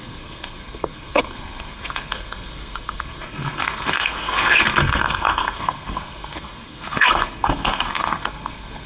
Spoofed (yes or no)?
yes